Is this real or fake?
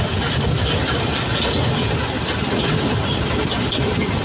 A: real